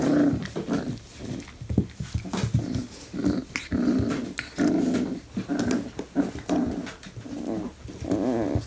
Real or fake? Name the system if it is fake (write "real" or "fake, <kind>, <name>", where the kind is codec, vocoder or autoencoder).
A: real